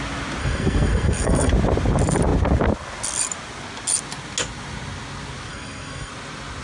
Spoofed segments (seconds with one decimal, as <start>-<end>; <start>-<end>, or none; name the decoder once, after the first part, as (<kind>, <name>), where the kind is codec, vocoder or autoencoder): 0.4-1.5 (codec, SNAC); 5.5-6.1